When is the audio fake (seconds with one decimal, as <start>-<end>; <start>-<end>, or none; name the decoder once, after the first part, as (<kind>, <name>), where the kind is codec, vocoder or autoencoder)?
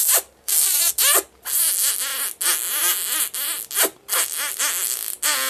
0.4-0.9 (codec, SNAC)